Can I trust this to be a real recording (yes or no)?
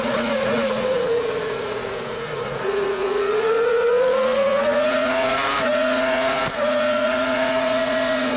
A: no